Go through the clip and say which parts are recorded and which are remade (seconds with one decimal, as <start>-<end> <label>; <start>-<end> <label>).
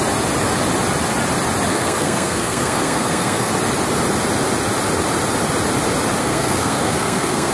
0.0-1.7 recorded; 1.7-3.5 remade; 3.5-6.2 recorded; 6.2-7.5 remade